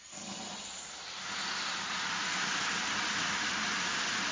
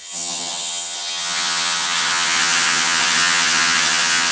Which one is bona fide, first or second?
first